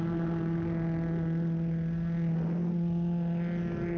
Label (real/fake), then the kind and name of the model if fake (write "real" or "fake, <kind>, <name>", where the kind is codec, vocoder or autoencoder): real